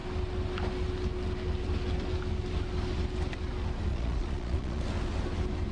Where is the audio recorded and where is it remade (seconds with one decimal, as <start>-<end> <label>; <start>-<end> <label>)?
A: 0.0-3.9 recorded; 3.9-4.8 remade; 4.8-5.7 recorded